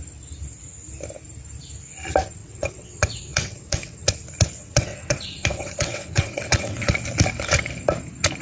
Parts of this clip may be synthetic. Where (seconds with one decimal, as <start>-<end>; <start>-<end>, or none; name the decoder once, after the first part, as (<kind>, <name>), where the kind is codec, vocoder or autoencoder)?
2.4-4.1 (vocoder, WaveNeXt); 4.6-6.9